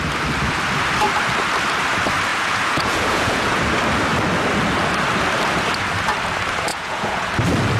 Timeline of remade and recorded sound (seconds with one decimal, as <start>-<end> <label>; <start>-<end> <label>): 0.0-2.3 recorded; 2.3-3.6 remade; 3.6-6.7 recorded; 6.7-7.3 remade; 7.3-7.8 recorded